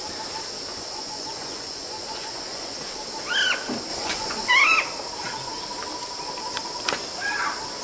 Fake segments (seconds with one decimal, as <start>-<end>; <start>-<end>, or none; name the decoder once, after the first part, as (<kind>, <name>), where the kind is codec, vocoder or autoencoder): 0.7-2.8 (vocoder, Vocos); 3.9-4.5